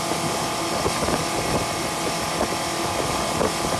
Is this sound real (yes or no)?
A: yes